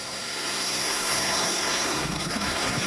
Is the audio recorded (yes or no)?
no